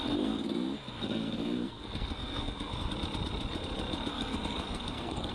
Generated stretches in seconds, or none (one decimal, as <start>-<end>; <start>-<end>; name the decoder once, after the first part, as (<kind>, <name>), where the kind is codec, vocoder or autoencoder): 0.0-2.9 (codec, SNAC); 4.1-5.3